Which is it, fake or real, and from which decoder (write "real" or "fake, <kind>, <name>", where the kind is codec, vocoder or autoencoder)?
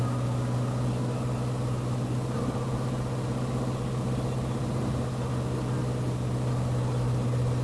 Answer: real